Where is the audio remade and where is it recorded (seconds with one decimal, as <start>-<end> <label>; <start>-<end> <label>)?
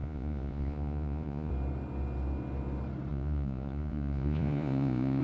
0.0-1.5 remade; 1.5-3.1 recorded; 3.1-5.2 remade